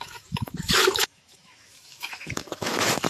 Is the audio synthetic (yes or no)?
yes